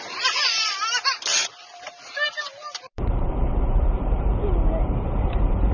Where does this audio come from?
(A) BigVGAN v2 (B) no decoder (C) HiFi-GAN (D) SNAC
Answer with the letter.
A